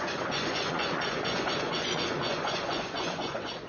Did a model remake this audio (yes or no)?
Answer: yes